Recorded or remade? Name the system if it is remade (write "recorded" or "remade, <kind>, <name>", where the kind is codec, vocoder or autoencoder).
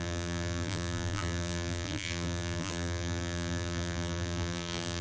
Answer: remade, vocoder, BigVGAN v2